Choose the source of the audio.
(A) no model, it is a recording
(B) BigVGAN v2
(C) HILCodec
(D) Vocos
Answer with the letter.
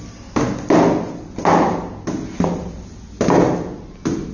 A